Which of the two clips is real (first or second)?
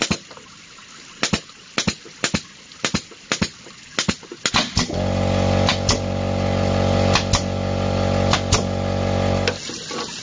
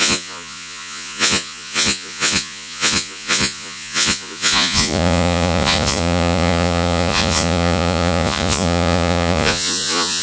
first